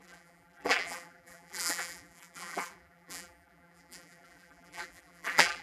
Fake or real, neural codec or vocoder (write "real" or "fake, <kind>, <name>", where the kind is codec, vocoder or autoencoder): fake, vocoder, BigVGAN v2